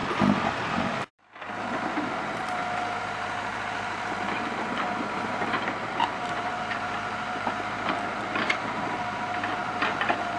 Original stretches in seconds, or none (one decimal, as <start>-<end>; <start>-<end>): 0.0-0.5; 0.9-3.0